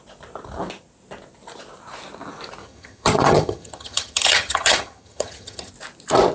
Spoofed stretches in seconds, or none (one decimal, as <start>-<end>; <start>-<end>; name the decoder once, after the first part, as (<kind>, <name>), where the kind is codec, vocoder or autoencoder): 2.6-5.7 (vocoder, HiFi-GAN)

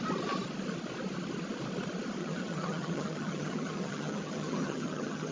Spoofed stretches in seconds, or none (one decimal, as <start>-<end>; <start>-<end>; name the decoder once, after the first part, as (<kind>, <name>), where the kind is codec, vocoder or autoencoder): 2.2-5.3 (vocoder, HiFi-GAN)

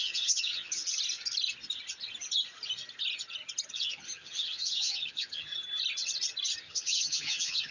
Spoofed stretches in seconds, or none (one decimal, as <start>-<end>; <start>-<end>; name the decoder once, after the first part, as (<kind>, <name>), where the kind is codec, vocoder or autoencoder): 0.0-0.8 (vocoder, HiFi-GAN); 3.7-5.5; 6.6-7.7

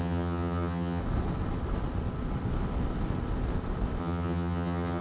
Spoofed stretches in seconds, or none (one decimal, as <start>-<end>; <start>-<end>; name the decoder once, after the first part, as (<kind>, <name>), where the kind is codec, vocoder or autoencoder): 0.0-1.0 (vocoder, HiFi-GAN); 4.0-5.0

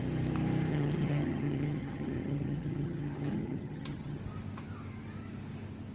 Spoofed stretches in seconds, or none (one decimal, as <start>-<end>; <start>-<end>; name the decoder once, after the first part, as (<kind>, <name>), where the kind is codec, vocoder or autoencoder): 0.7-4.2 (vocoder, HiFi-GAN)

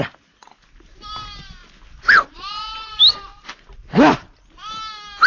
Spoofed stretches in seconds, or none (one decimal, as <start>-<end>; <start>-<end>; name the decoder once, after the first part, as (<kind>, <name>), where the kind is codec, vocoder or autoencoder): none